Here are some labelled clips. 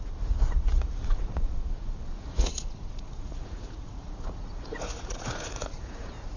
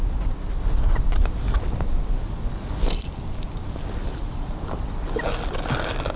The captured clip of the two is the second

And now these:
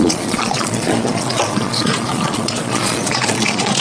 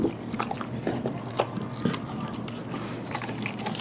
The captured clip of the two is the second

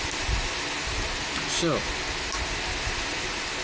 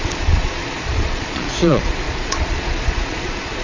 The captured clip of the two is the first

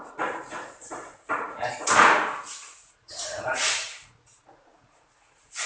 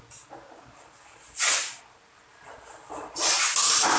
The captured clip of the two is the second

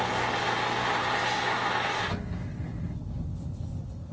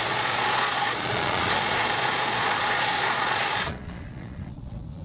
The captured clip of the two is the first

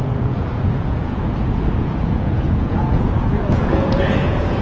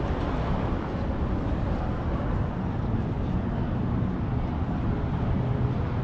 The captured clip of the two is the second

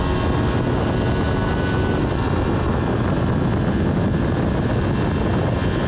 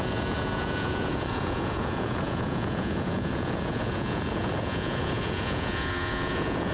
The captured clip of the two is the first